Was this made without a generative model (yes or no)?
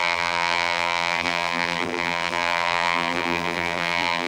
no